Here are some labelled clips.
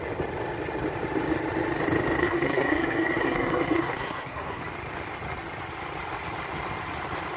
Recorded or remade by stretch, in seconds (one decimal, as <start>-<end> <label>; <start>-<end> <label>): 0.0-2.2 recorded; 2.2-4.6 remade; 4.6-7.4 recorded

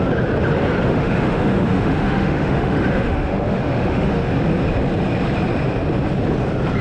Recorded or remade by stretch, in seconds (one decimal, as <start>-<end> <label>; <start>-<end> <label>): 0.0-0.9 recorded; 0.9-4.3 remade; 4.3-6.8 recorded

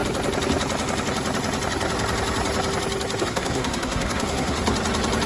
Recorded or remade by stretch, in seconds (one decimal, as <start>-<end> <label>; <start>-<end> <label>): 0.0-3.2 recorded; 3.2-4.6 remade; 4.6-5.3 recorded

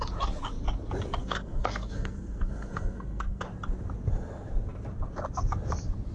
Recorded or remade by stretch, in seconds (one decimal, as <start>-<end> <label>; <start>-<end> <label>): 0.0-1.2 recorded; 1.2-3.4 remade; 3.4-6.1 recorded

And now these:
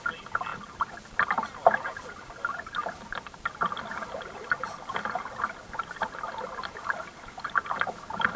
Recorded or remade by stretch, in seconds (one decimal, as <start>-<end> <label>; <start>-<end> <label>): 0.0-8.4 recorded

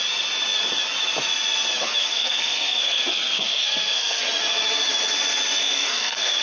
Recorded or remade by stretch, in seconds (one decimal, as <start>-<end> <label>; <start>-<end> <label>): 0.0-2.0 recorded; 2.0-4.2 remade; 4.2-5.6 recorded; 5.6-6.4 remade

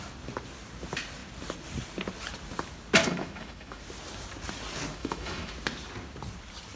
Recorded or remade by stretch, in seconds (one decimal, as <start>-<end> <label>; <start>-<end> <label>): 0.0-3.0 recorded; 3.0-3.8 remade; 3.8-5.0 recorded; 5.0-5.5 remade; 5.5-6.8 recorded

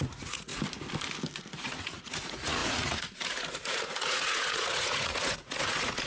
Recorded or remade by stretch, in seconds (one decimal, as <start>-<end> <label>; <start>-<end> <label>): 0.0-0.5 remade; 0.5-1.4 recorded; 1.4-6.1 remade